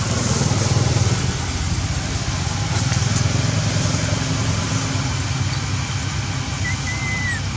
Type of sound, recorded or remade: recorded